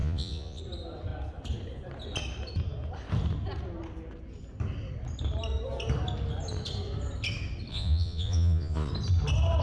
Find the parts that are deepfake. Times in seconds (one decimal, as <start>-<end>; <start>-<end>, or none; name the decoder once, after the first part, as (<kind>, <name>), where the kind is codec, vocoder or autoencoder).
0.0-0.6 (vocoder, Vocos); 7.7-8.9